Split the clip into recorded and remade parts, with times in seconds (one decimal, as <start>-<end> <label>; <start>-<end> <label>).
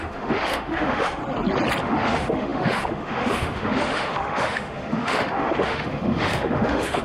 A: 0.0-1.2 remade; 1.2-1.8 recorded; 1.8-7.0 remade